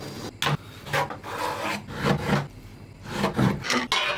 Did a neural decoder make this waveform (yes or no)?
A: no